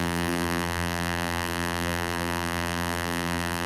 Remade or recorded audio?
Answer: remade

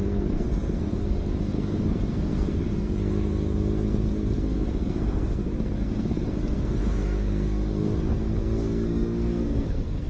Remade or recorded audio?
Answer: remade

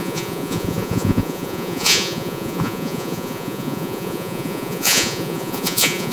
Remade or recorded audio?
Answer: remade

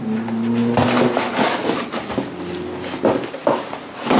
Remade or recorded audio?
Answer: recorded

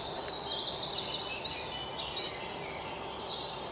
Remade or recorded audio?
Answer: recorded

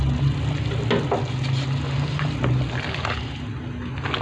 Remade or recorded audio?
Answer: recorded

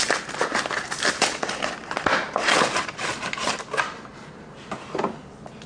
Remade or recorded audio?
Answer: recorded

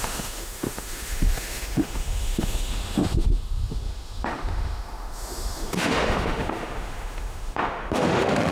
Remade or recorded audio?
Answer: remade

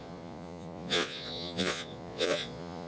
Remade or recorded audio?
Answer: remade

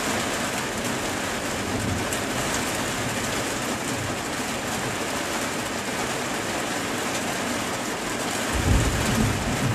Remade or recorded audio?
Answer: recorded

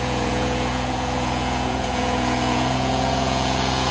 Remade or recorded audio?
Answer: remade